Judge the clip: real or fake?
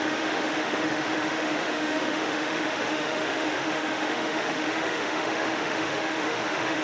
fake